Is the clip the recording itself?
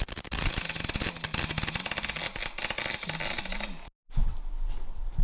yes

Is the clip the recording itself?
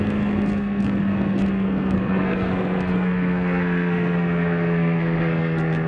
no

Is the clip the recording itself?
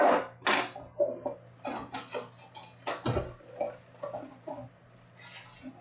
yes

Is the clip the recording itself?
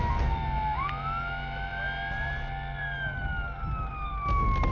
yes